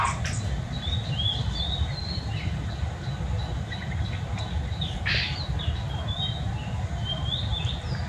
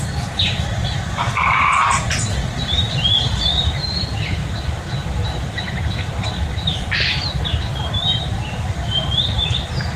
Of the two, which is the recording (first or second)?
first